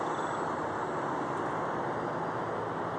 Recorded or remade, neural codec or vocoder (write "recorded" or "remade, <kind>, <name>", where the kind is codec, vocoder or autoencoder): recorded